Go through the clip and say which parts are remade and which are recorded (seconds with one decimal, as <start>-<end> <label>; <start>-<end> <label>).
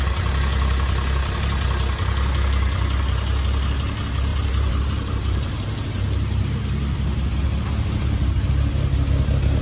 0.0-4.3 recorded; 4.3-6.5 remade; 6.5-9.6 recorded